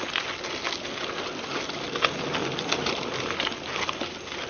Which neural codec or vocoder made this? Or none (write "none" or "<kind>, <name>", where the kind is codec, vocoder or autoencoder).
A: none